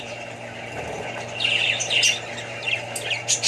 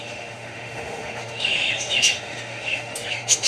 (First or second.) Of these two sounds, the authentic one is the first